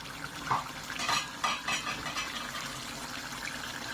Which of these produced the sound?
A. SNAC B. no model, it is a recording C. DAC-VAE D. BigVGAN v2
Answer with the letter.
B